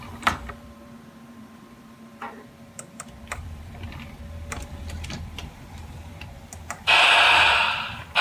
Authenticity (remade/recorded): remade